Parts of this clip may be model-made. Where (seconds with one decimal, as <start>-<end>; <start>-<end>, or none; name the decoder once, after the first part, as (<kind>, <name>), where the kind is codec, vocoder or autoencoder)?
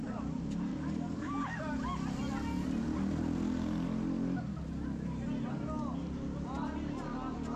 0.7-1.6 (codec, DAC)